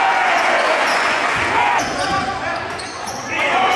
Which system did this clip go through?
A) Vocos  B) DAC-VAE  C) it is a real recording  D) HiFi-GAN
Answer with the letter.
A